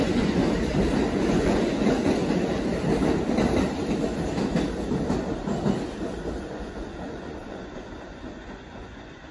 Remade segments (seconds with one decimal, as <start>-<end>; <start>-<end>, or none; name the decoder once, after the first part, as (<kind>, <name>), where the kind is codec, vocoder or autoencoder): 0.0-0.4 (vocoder, Vocos); 1.3-2.7; 6.4-9.3